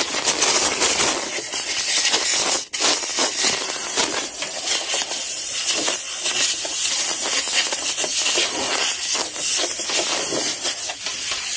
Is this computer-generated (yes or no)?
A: no